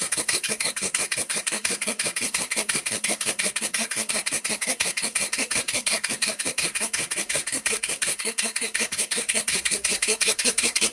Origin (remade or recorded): remade